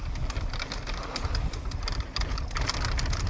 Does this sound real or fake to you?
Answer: real